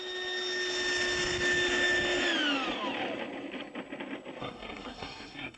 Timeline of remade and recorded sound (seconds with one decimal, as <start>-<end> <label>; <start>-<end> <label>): 0.0-4.4 recorded; 4.4-5.6 remade